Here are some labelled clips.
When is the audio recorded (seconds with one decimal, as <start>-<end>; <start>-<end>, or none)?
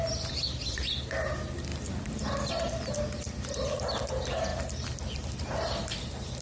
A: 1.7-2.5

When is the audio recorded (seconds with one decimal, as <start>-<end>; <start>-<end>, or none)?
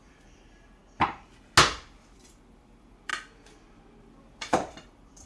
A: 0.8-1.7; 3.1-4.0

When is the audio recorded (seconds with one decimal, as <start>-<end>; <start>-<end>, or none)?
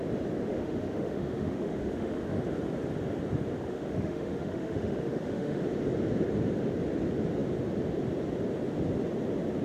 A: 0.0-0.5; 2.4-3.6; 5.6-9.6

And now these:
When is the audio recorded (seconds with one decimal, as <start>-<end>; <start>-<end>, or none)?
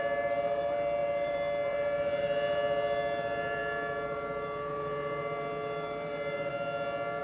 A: 6.5-7.2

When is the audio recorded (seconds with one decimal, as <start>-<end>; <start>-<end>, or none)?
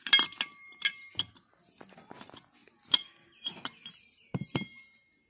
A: 0.0-5.3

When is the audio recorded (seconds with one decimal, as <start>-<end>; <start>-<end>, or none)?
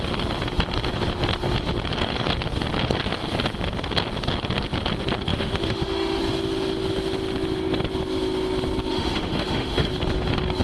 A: 0.0-5.3; 6.2-8.9; 9.9-10.6